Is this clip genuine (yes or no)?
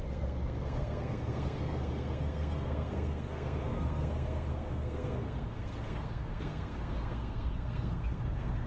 no